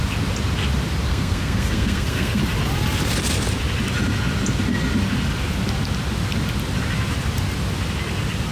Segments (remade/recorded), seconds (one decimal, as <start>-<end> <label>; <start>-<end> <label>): 0.0-1.1 recorded; 1.1-2.4 remade; 2.4-8.5 recorded